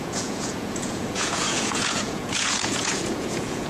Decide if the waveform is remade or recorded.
remade